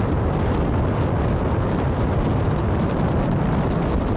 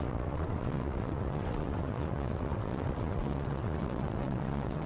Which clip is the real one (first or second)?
first